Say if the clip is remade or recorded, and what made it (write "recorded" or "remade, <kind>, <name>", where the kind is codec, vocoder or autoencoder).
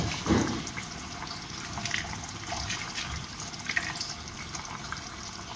remade, vocoder, BigVGAN v2